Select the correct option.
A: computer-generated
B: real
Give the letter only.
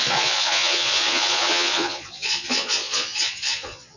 A